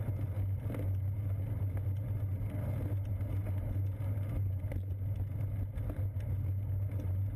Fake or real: real